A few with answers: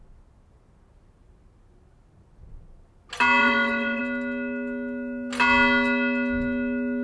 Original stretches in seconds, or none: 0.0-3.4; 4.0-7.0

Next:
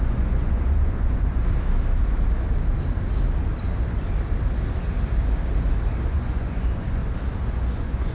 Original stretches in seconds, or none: 1.4-6.1; 7.0-7.5

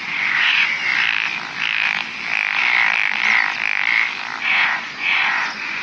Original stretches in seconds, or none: 0.9-4.4

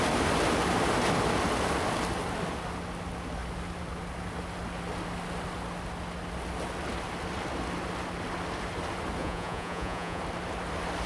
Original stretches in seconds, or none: 0.0-9.2; 10.2-11.1

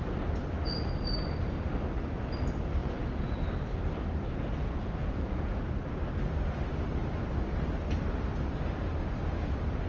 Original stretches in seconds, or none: 0.0-2.8; 3.4-4.6; 5.6-9.9